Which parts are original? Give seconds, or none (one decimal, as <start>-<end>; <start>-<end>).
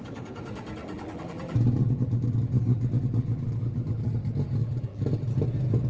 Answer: 0.0-0.8; 4.1-4.6; 5.3-5.9